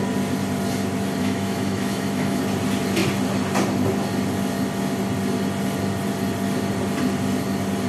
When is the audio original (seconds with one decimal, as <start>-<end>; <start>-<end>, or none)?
0.0-1.2; 2.4-7.9